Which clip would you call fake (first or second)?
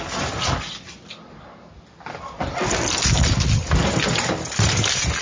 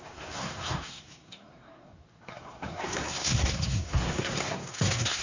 second